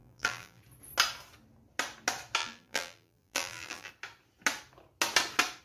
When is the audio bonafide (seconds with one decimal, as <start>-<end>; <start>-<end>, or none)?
0.6-2.4; 3.9-5.6